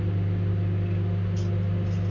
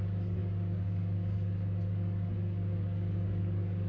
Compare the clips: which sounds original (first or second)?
first